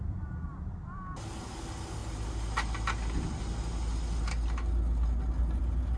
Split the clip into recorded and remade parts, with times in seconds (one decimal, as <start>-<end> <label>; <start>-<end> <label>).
0.0-6.0 recorded